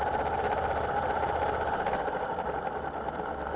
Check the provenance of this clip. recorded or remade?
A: recorded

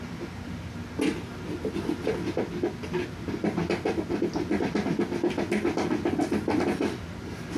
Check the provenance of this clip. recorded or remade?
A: recorded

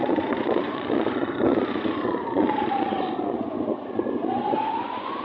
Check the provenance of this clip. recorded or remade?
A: remade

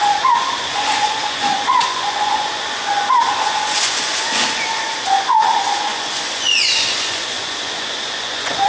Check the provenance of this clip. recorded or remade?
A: remade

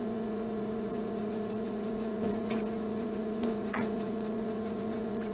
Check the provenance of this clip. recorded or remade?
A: remade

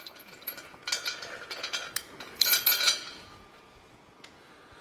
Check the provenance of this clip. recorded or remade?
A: remade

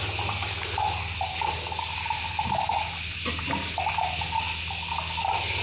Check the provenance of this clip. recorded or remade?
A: recorded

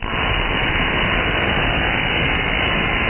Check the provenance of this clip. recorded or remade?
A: recorded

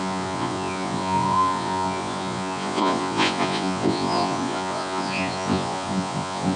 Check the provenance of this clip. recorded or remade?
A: remade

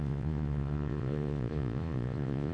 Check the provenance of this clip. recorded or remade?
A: remade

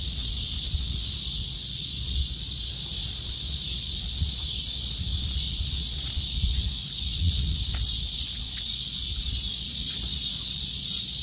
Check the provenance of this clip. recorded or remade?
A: remade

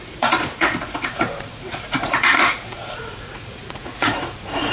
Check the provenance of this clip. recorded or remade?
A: remade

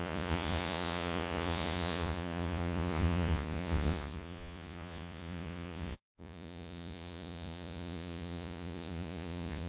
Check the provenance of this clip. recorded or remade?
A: remade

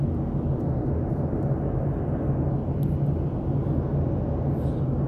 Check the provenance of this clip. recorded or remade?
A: recorded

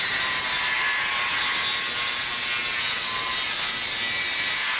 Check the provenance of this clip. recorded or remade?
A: recorded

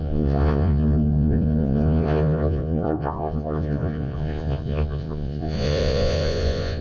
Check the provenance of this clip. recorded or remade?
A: remade